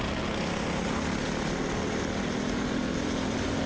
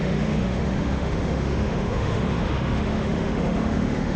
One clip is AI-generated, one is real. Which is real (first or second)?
first